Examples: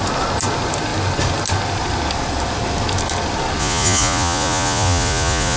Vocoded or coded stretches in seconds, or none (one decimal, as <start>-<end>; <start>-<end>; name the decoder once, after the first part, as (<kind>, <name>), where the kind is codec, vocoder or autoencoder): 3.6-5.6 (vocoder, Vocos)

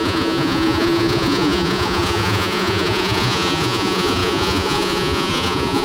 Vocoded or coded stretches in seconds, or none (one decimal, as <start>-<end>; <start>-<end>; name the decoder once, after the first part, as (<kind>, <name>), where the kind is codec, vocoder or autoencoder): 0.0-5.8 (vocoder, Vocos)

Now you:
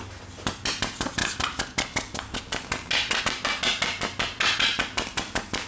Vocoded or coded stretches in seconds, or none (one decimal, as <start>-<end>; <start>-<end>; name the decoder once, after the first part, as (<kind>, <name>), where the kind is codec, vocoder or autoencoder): none